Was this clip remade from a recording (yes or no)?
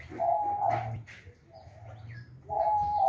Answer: no